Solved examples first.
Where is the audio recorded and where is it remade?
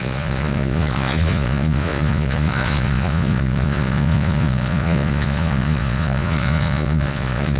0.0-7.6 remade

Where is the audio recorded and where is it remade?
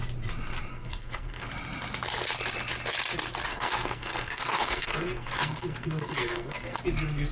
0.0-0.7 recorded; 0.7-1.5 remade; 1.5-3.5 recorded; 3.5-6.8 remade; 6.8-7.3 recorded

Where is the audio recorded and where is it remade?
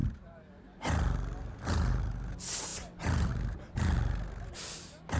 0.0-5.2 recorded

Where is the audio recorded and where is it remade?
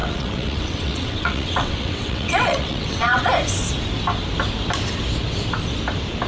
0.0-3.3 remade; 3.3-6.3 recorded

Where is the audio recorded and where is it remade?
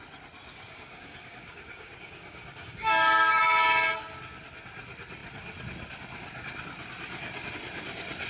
0.0-0.5 recorded; 0.5-3.4 remade; 3.4-8.3 recorded